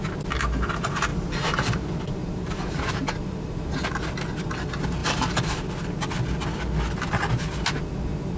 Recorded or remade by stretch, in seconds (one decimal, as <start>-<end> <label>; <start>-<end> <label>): 0.0-1.1 recorded; 1.1-3.7 remade; 3.7-5.0 recorded; 5.0-5.7 remade; 5.7-8.4 recorded